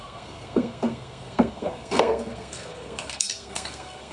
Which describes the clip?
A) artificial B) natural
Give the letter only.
A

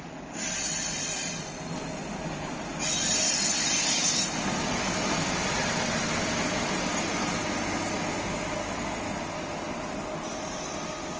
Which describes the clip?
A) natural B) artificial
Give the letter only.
A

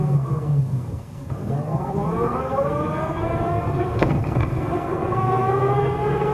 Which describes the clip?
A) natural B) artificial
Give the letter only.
B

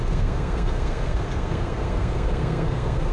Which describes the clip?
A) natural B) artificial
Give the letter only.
B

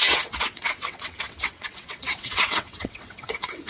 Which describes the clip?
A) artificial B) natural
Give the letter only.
A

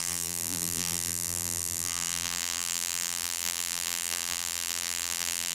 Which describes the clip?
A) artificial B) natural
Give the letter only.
A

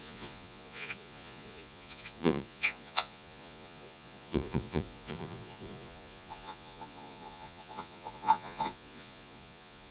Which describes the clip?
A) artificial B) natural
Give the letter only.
A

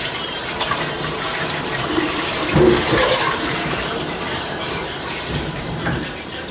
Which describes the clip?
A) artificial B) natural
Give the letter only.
A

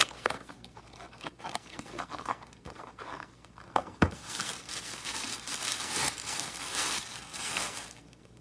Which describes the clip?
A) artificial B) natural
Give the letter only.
A